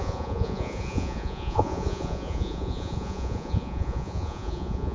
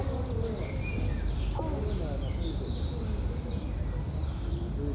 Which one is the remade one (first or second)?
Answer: first